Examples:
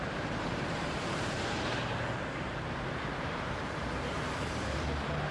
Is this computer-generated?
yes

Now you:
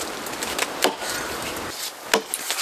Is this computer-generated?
no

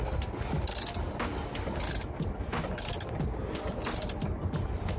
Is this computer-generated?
no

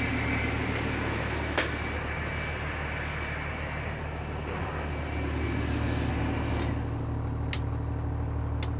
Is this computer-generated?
no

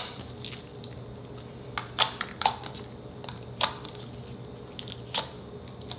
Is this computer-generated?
no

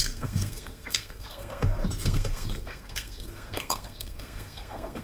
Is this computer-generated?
yes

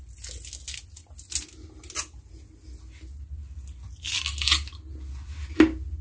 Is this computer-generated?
no